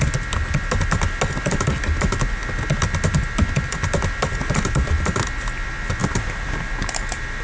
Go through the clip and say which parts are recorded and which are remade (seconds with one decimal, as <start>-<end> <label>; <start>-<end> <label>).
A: 0.0-6.0 recorded; 6.0-7.4 remade